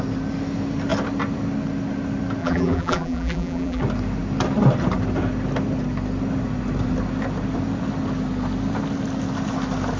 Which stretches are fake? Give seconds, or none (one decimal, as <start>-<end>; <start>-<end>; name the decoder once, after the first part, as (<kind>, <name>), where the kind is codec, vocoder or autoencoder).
2.4-3.8 (vocoder, BigVGAN v2)